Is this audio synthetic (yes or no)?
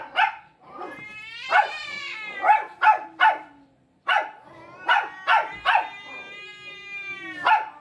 no